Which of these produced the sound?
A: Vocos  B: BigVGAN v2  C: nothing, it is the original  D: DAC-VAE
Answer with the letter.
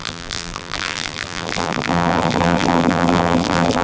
B